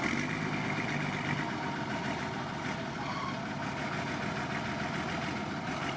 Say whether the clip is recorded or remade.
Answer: recorded